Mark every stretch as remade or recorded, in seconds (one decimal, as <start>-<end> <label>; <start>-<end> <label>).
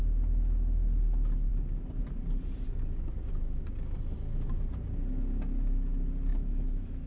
0.0-6.3 recorded; 6.3-7.1 remade